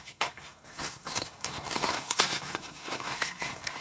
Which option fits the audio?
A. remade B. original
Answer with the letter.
A